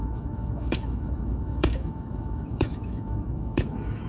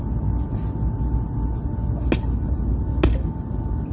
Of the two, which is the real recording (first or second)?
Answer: second